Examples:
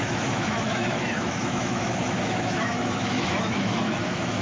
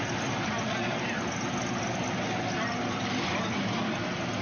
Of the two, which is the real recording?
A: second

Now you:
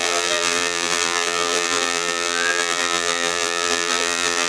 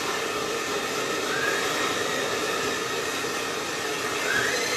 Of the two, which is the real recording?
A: second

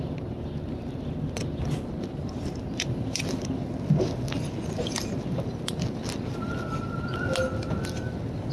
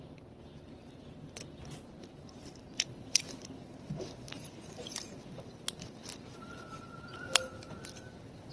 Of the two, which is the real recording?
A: first